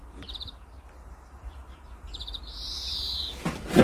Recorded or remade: remade